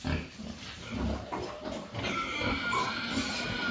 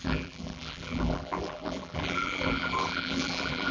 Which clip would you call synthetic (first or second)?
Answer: second